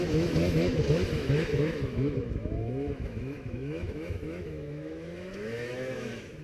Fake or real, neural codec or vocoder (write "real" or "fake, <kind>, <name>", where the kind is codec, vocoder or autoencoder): fake, autoencoder, DAC-VAE